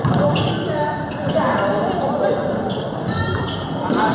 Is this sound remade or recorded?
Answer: recorded